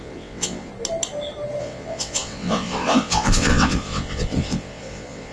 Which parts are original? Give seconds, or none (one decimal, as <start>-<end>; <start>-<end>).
0.7-1.6